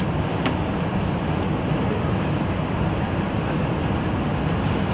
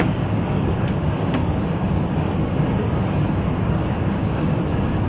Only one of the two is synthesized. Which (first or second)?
second